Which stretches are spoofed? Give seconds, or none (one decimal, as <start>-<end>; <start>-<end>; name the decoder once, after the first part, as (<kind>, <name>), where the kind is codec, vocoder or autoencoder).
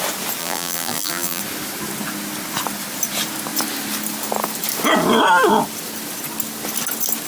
0.4-1.4 (vocoder, BigVGAN v2)